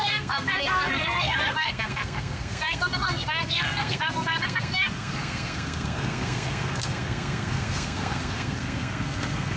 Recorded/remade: remade